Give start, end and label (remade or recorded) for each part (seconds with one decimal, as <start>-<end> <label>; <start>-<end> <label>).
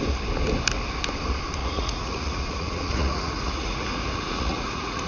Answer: 0.0-1.6 recorded; 1.6-5.1 remade